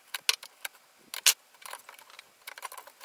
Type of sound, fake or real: real